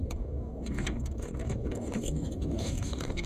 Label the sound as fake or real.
fake